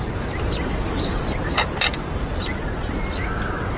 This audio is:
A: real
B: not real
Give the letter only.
A